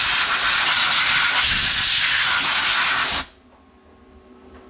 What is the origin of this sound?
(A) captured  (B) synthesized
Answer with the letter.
A